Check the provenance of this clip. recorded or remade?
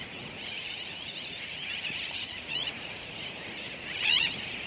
remade